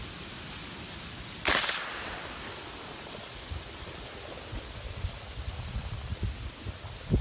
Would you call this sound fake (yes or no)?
no